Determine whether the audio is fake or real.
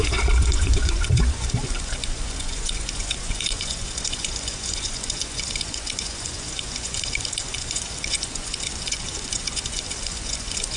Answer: fake